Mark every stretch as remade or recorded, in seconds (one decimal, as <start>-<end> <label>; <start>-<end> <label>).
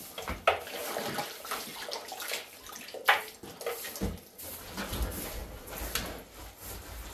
0.0-7.1 recorded